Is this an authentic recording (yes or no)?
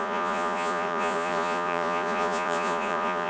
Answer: no